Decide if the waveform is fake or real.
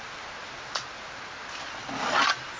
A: real